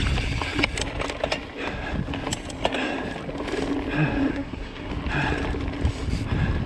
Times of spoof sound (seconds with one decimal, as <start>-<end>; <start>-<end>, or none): 4.3-4.9

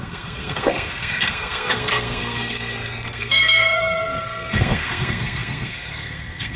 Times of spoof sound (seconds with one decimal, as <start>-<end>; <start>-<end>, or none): 0.0-6.6

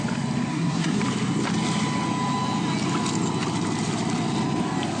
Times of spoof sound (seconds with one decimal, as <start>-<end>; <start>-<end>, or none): 0.5-1.0